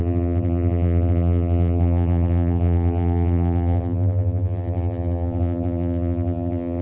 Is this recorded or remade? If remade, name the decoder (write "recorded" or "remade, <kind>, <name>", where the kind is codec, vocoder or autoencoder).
remade, vocoder, BigVGAN v2